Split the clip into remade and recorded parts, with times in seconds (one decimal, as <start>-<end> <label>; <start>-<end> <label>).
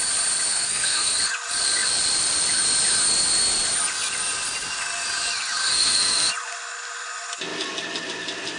0.0-0.5 recorded; 0.5-1.2 remade; 1.2-5.6 recorded; 5.6-6.3 remade; 6.3-8.6 recorded